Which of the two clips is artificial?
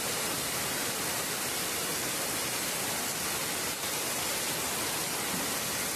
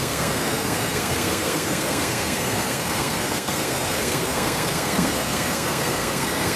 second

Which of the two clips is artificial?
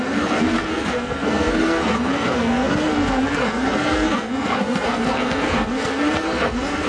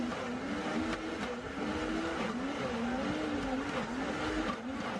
first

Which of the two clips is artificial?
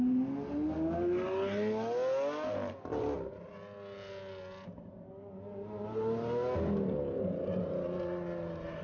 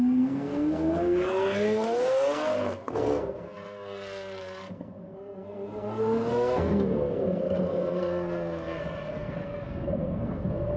second